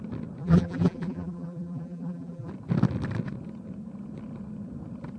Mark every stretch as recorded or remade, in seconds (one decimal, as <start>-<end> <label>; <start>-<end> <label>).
0.0-0.4 recorded; 0.4-2.5 remade; 2.5-5.2 recorded